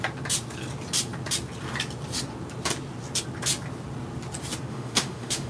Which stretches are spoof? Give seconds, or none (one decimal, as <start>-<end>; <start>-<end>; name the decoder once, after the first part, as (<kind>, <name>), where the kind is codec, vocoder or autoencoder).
4.7-5.5 (autoencoder, DAC-VAE)